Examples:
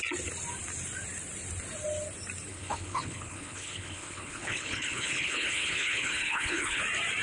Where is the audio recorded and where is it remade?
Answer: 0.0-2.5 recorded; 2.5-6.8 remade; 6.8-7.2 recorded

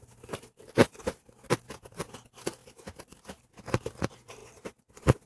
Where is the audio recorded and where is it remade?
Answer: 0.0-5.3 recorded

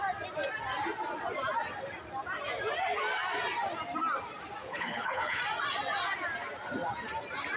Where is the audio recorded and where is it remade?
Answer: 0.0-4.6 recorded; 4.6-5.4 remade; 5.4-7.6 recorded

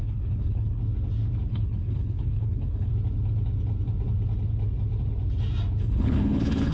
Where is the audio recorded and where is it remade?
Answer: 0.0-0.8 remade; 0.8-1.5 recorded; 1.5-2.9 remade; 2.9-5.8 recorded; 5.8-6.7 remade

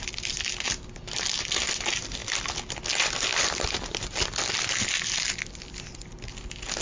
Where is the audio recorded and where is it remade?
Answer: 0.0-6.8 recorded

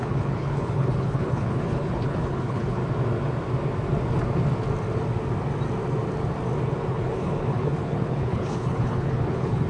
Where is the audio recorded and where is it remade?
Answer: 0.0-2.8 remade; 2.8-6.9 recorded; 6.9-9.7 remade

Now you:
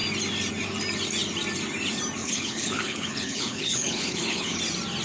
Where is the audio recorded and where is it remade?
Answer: 0.0-2.2 recorded; 2.2-4.6 remade; 4.6-5.0 recorded

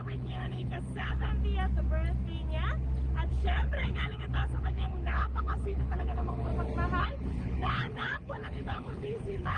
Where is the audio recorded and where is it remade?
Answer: 0.0-1.3 remade; 1.3-3.3 recorded; 3.3-6.5 remade; 6.5-7.0 recorded; 7.0-9.6 remade